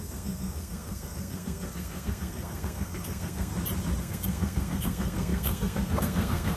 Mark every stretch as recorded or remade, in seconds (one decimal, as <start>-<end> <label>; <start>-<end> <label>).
0.0-3.5 remade; 3.5-4.0 recorded; 4.0-6.6 remade

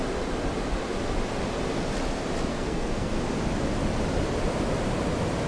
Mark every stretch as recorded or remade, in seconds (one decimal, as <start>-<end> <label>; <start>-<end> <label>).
0.0-2.5 recorded; 2.5-3.2 remade; 3.2-5.5 recorded

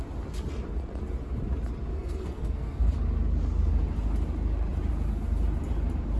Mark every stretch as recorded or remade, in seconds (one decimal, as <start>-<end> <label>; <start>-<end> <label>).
0.0-1.9 recorded; 1.9-2.9 remade; 2.9-6.2 recorded

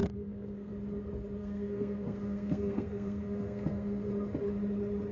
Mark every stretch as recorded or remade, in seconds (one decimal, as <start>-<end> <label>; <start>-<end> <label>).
0.0-0.7 remade; 0.7-1.4 recorded; 1.4-4.1 remade; 4.1-5.1 recorded

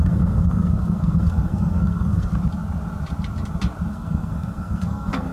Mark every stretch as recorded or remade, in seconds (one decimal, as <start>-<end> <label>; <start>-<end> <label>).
0.0-2.3 remade; 2.3-3.9 recorded; 3.9-5.3 remade